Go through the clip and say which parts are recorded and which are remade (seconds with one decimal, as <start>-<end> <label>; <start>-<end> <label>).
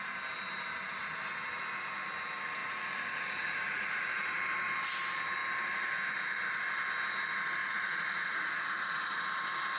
0.0-2.6 recorded; 2.6-4.4 remade; 4.4-7.6 recorded; 7.6-9.2 remade; 9.2-9.8 recorded